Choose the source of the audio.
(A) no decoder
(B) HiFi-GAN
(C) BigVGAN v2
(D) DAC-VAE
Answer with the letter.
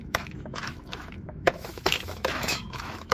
D